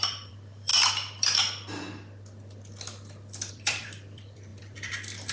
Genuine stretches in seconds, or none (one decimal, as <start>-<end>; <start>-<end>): 0.7-3.5